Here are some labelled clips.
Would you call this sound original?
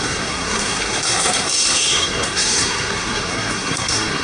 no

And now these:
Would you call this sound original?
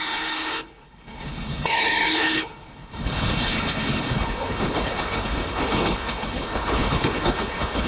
no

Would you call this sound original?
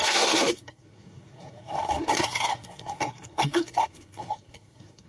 no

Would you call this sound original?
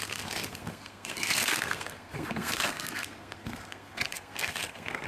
no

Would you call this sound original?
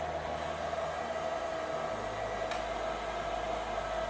yes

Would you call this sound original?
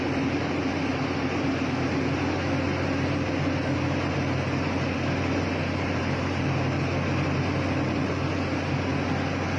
yes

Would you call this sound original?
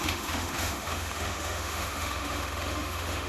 no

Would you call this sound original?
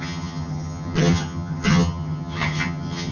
no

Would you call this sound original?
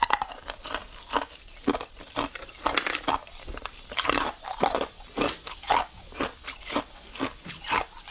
yes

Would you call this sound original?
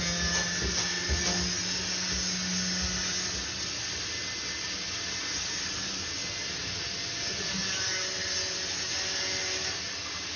yes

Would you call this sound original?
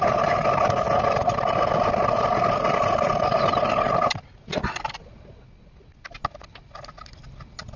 yes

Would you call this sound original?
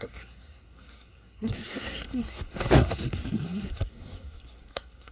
no